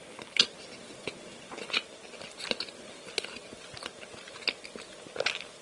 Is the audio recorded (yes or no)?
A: yes